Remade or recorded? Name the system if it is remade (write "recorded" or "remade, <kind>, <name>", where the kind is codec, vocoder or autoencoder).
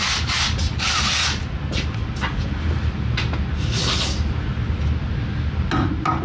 recorded